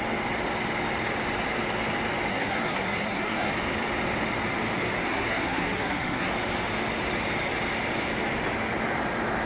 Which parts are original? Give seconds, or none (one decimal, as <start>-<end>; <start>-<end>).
0.0-2.3; 3.5-5.1; 6.3-9.5